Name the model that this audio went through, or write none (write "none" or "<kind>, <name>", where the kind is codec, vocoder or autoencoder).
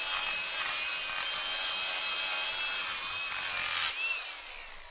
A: none